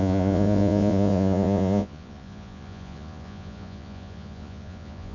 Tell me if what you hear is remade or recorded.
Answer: remade